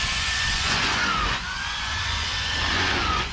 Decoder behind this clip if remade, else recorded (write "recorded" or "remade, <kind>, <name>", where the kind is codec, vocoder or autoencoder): remade, vocoder, Vocos